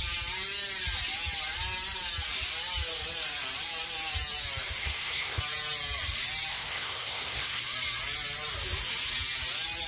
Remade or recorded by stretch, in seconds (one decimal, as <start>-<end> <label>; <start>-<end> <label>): 0.0-4.8 recorded; 4.8-5.4 remade; 5.4-6.5 recorded; 6.5-7.6 remade; 7.6-9.9 recorded